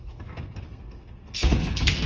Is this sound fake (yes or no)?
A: yes